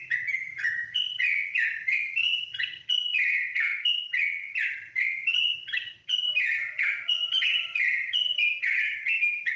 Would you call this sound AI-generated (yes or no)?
yes